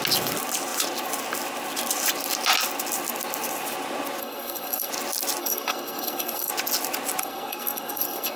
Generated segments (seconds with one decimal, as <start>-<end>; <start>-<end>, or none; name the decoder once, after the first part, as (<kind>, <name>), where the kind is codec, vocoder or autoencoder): 4.2-4.9 (codec, SNAC); 5.4-6.5; 7.2-8.4